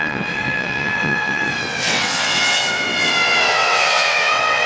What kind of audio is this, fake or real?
fake